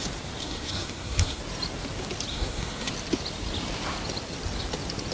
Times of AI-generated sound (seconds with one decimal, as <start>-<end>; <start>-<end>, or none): 0.4-1.4; 2.3-2.9

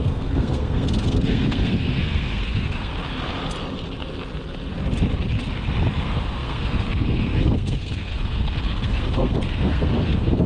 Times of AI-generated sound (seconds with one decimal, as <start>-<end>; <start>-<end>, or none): 0.0-2.9; 6.0-10.5

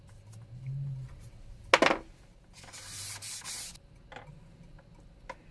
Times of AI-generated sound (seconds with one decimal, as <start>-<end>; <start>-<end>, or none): none

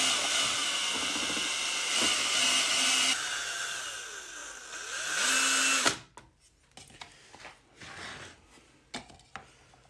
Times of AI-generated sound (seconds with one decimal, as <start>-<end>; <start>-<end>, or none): none

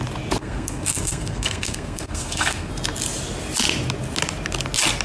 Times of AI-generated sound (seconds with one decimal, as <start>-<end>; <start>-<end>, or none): 0.4-2.7

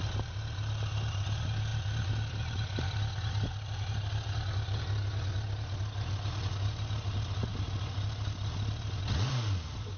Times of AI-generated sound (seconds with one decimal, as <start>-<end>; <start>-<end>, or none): none

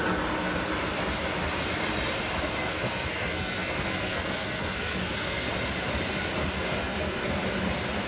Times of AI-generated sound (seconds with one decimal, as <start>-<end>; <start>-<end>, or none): 2.7-5.5; 6.8-7.3

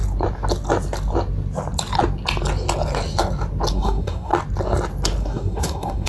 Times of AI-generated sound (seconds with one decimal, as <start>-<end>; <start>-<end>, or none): 3.7-4.3; 5.2-6.1